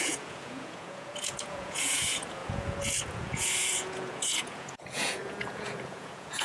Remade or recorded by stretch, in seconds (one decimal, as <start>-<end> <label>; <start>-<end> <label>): 0.0-6.4 remade